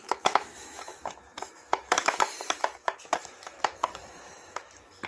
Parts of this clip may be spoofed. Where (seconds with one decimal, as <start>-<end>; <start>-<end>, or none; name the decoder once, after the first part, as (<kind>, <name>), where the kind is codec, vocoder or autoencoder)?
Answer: 0.0-5.1 (autoencoder, DAC-VAE)